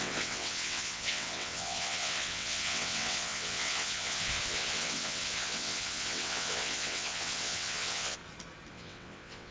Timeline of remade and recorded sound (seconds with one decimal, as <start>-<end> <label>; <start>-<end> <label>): 0.0-8.2 remade; 8.2-8.7 recorded; 8.7-9.5 remade